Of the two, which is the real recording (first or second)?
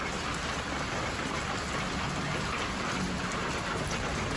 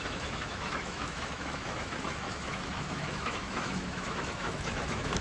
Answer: first